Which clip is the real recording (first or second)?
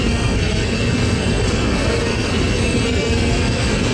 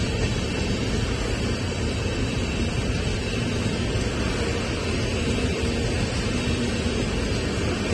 second